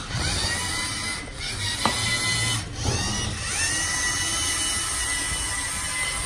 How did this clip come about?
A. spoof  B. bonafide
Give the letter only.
B